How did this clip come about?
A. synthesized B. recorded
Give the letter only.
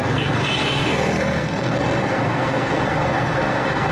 A